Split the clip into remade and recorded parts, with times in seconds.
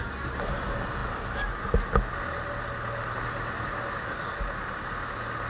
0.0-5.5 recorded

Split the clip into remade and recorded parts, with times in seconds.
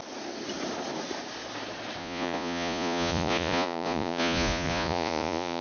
0.0-2.0 recorded; 2.0-5.6 remade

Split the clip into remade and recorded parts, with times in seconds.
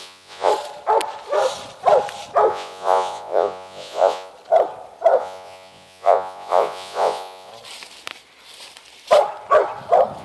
0.0-0.5 remade; 0.5-2.5 recorded; 2.5-4.3 remade; 4.3-5.2 recorded; 5.2-7.5 remade; 7.5-10.2 recorded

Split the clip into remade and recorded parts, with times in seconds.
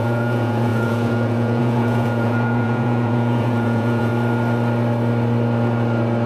0.0-4.1 remade; 4.1-6.3 recorded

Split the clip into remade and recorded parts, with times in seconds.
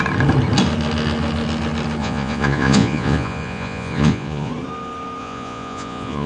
0.0-2.0 recorded; 2.0-4.5 remade; 4.5-5.2 recorded; 5.2-6.3 remade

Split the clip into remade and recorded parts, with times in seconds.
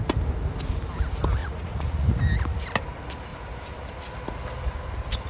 0.0-1.4 recorded; 1.4-2.2 remade; 2.2-5.3 recorded